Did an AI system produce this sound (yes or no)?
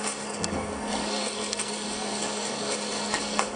yes